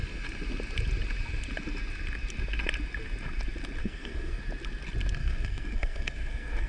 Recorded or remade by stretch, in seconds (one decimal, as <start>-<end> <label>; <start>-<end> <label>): 0.0-3.8 recorded; 3.8-4.4 remade; 4.4-5.2 recorded; 5.2-6.7 remade